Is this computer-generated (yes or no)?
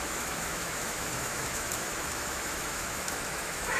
yes